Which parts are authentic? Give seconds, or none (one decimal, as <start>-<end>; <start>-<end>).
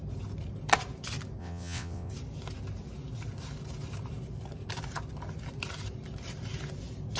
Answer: 0.0-1.4; 2.1-7.2